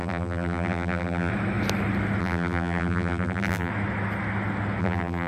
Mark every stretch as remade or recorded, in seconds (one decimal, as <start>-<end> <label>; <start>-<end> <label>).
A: 0.0-1.3 remade; 1.3-2.2 recorded; 2.2-3.7 remade; 3.7-4.8 recorded; 4.8-5.3 remade